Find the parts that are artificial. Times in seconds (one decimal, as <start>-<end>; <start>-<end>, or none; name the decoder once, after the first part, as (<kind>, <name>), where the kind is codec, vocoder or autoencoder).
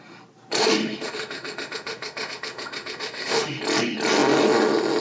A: 0.6-3.6 (autoencoder, DAC-VAE)